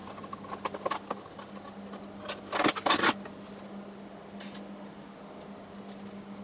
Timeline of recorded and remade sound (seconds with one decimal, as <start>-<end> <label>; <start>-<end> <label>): 0.0-6.4 recorded